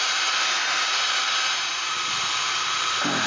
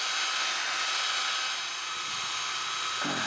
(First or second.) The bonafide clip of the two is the second